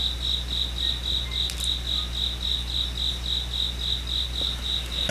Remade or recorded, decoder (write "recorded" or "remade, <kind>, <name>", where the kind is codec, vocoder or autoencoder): recorded